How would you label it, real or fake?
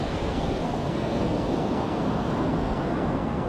fake